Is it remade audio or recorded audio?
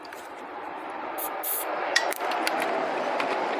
remade